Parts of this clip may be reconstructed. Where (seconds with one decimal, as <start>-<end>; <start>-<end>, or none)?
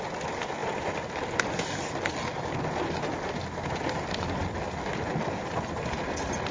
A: none